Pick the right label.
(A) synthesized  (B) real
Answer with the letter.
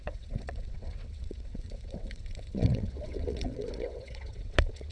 A